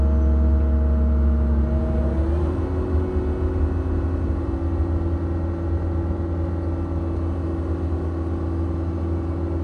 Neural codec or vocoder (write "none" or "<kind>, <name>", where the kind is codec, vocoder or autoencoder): none